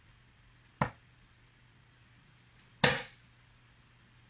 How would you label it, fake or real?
real